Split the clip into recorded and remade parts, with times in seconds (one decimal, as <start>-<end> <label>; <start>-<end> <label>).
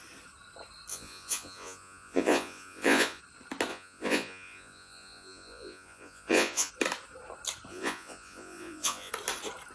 0.0-0.9 recorded; 0.9-3.2 remade; 3.2-3.7 recorded; 3.7-6.7 remade; 6.7-7.7 recorded; 7.7-9.1 remade; 9.1-9.7 recorded